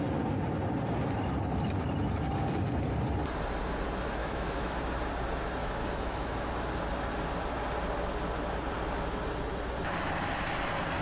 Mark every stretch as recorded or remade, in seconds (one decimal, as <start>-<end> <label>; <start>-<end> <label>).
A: 0.0-4.2 recorded; 4.2-4.8 remade; 4.8-5.6 recorded; 5.6-6.5 remade; 6.5-11.0 recorded